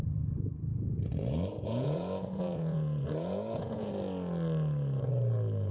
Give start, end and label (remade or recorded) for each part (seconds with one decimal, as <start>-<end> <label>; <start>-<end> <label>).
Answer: 0.0-0.7 recorded; 0.7-3.9 remade; 3.9-5.7 recorded